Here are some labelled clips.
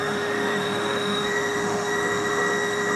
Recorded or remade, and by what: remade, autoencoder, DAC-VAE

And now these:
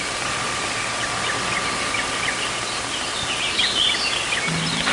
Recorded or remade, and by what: recorded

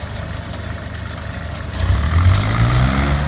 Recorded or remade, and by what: recorded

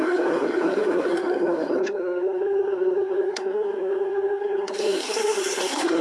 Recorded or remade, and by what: remade, codec, SNAC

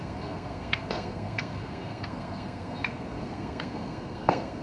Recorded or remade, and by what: remade, codec, SNAC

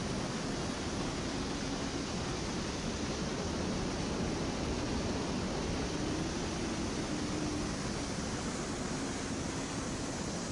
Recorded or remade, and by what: recorded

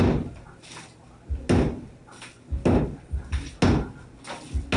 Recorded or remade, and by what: recorded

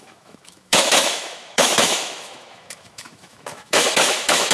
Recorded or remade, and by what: remade, autoencoder, DAC-VAE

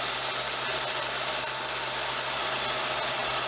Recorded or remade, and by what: recorded